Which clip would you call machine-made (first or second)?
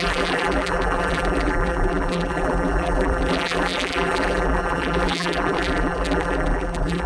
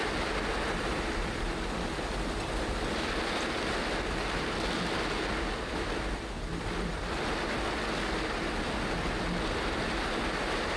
first